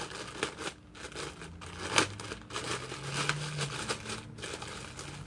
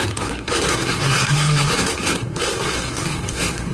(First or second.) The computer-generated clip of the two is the second